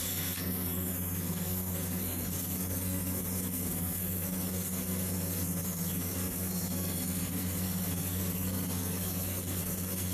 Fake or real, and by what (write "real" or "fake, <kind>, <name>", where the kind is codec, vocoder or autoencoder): fake, codec, SNAC